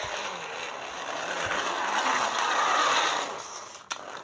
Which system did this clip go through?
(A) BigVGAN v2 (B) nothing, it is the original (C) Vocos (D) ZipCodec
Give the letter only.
B